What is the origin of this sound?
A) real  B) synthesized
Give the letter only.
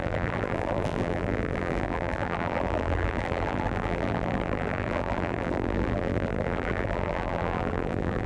B